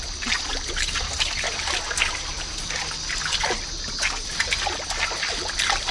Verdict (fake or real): real